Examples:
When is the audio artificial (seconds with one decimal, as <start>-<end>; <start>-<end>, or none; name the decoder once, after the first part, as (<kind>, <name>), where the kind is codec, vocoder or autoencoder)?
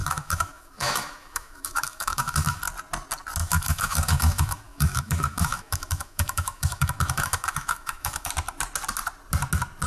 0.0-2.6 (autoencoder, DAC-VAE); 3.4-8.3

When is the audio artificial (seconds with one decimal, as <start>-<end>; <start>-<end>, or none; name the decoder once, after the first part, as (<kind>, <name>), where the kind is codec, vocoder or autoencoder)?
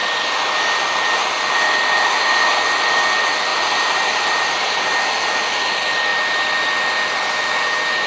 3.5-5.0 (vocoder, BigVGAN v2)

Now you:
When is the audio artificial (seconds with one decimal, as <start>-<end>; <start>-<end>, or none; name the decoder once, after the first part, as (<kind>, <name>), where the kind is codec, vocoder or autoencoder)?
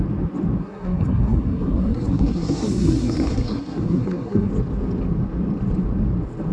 0.6-4.5 (codec, SNAC)